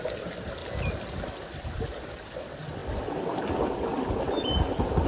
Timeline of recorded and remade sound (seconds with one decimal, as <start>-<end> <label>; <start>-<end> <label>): 0.0-5.1 recorded